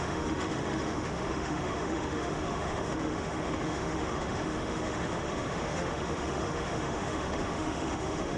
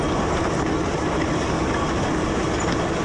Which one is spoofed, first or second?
first